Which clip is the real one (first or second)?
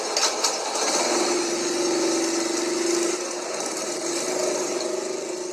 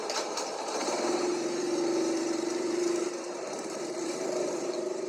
first